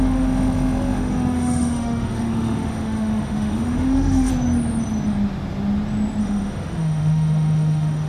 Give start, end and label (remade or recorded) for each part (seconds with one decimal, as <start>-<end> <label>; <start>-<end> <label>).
0.0-4.3 remade; 4.3-6.2 recorded; 6.2-8.1 remade